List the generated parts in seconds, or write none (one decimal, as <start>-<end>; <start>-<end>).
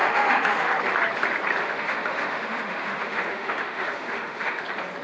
0.0-0.7; 1.6-4.6